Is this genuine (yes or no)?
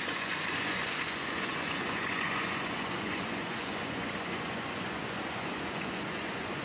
no